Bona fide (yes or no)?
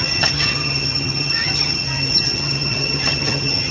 no